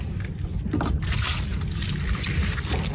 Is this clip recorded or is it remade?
recorded